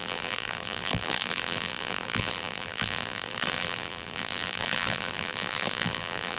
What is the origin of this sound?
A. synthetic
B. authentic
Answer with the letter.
A